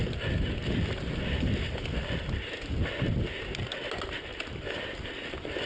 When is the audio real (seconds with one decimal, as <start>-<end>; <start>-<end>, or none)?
0.0-5.7